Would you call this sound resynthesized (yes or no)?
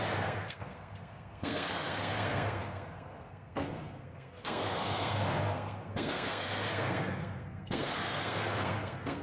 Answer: yes